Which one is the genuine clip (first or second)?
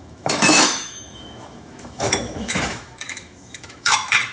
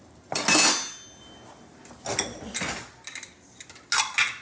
second